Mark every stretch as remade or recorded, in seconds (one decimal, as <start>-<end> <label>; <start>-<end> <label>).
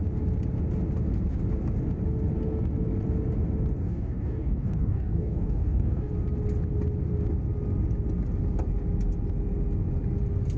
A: 0.0-3.8 recorded; 3.8-6.1 remade; 6.1-10.6 recorded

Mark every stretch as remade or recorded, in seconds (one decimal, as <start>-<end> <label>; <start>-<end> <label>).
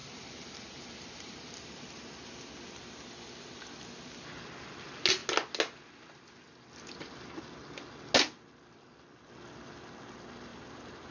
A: 0.0-2.5 remade; 2.5-10.5 recorded; 10.5-11.1 remade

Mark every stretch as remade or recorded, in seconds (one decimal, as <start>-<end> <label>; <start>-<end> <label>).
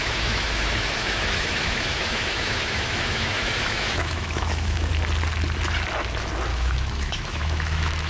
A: 0.0-4.9 remade; 4.9-6.5 recorded; 6.5-8.1 remade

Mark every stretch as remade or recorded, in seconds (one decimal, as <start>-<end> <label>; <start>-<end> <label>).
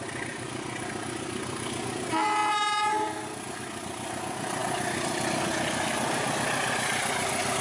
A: 0.0-7.6 recorded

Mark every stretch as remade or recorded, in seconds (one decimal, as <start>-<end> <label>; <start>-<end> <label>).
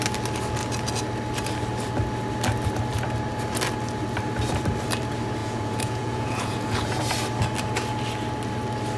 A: 0.0-5.4 recorded; 5.4-7.0 remade; 7.0-9.0 recorded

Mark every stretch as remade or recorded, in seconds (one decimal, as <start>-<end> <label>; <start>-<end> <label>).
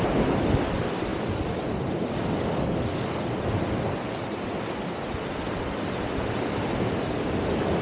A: 0.0-7.8 recorded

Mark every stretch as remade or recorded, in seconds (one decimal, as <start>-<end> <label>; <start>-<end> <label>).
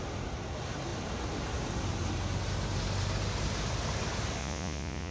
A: 0.0-4.4 recorded; 4.4-5.1 remade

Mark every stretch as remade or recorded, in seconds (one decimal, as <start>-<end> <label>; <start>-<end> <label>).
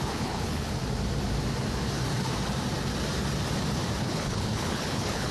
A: 0.0-0.8 remade; 0.8-4.0 recorded; 4.0-5.3 remade